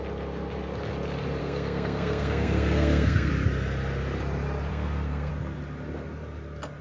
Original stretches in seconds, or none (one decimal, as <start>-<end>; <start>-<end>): 0.0-1.4; 3.3-4.7; 5.3-6.8